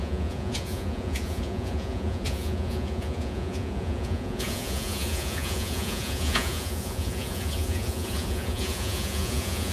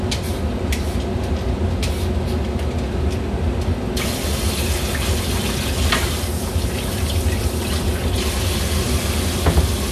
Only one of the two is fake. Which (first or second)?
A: first